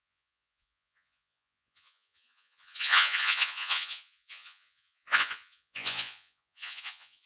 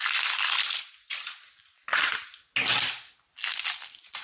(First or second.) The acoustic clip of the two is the second